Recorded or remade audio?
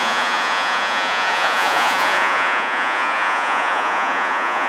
remade